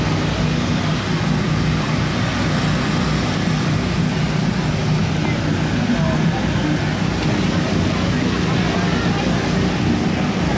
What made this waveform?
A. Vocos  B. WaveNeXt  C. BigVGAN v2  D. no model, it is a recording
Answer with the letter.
D